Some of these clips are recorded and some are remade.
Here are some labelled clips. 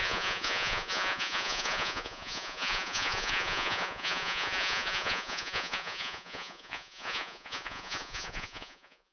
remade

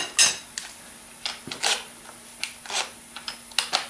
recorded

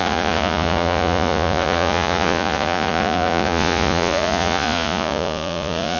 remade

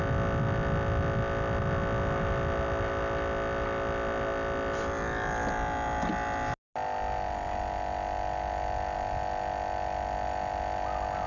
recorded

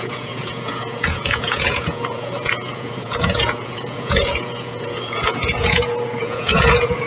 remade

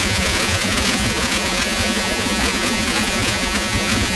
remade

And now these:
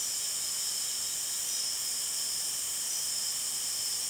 recorded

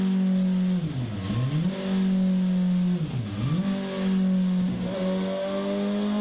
recorded